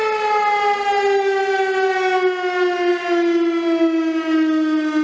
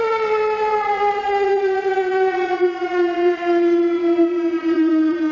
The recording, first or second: first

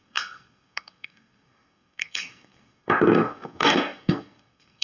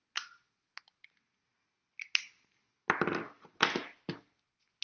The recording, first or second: second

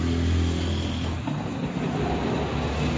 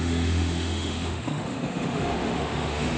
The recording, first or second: first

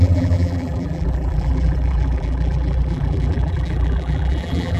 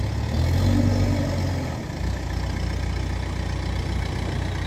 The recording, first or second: second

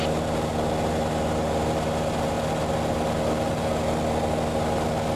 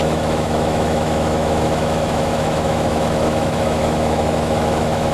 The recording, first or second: first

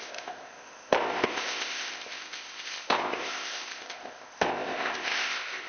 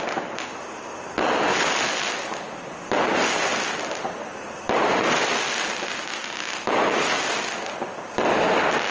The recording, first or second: second